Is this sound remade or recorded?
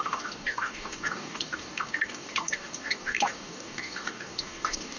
remade